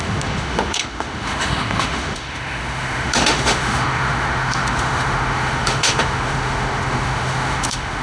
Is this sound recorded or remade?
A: remade